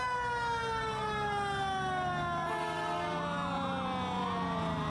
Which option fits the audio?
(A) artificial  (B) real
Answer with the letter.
B